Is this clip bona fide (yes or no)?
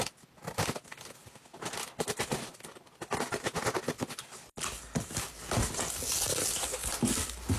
yes